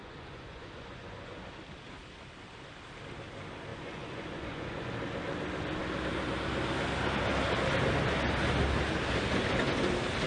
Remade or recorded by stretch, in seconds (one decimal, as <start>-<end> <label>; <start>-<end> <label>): 0.0-1.4 remade; 1.4-3.7 recorded; 3.7-4.9 remade; 4.9-10.3 recorded